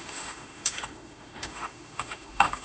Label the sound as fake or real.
fake